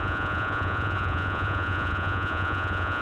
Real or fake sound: fake